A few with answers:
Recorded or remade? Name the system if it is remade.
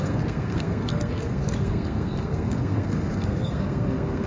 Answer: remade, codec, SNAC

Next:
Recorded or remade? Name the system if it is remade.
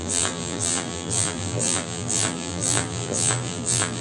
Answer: remade, vocoder, BigVGAN v2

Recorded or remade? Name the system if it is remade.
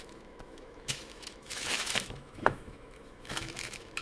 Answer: remade, autoencoder, DAC-VAE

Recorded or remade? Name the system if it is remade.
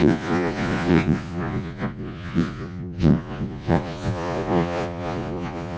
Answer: remade, vocoder, Vocos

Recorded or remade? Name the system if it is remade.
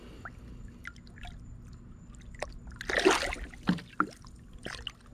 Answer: recorded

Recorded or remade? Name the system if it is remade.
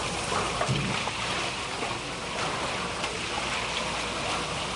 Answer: recorded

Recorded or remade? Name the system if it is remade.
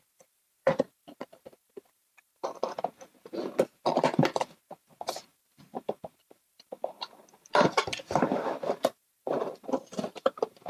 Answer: remade, vocoder, BigVGAN v2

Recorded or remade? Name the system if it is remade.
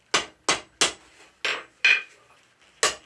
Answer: recorded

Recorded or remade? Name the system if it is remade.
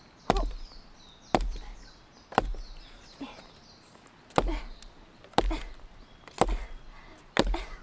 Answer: recorded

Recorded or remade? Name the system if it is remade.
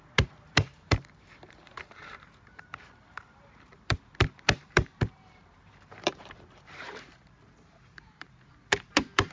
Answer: remade, vocoder, BigVGAN v2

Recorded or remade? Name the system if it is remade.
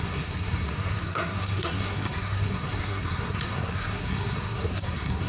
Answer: remade, codec, SNAC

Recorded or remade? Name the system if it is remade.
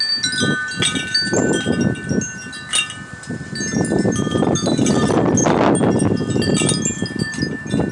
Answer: recorded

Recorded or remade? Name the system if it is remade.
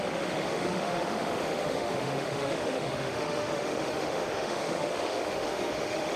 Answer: remade, autoencoder, DAC-VAE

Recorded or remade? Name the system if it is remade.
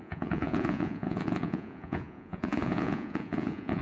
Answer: remade, vocoder, Vocos